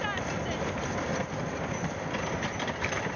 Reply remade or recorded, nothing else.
recorded